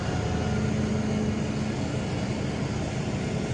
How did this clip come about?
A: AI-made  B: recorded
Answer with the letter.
B